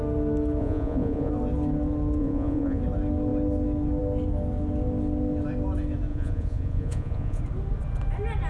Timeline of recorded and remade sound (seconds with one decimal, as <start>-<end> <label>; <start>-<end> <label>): 0.0-0.6 recorded; 0.6-1.3 remade; 1.3-2.2 recorded; 2.2-2.8 remade; 2.8-6.1 recorded; 6.1-7.4 remade; 7.4-8.5 recorded

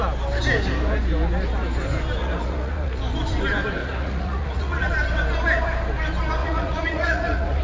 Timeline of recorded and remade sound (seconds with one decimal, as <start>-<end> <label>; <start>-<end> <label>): 0.0-2.2 recorded; 2.2-3.0 remade; 3.0-3.8 recorded; 3.8-4.9 remade; 4.9-6.4 recorded; 6.4-7.6 remade